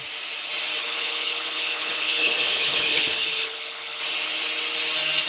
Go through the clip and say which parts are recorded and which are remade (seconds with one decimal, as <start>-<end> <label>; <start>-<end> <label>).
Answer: 0.0-0.8 recorded; 0.8-4.0 remade; 4.0-5.3 recorded